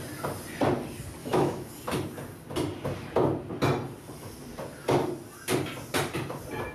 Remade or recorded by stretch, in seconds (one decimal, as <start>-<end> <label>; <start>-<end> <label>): 0.0-1.2 recorded; 1.2-1.7 remade; 1.7-6.7 recorded